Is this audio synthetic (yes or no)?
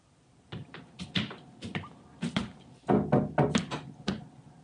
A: yes